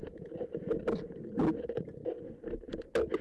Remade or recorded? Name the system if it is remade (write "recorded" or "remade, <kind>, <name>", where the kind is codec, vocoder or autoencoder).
recorded